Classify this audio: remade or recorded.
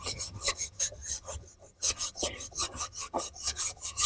remade